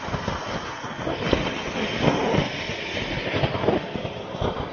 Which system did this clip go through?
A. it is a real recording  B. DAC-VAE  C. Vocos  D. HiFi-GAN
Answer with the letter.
A